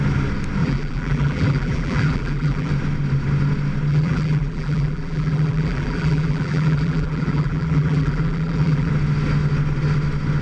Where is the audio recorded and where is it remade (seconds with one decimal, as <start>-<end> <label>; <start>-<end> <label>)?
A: 0.0-0.6 recorded; 0.6-2.7 remade; 2.7-3.9 recorded; 3.9-8.9 remade; 8.9-10.4 recorded